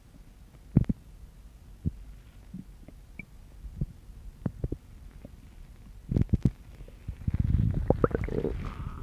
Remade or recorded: recorded